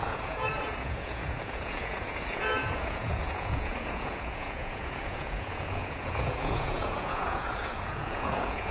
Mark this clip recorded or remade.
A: remade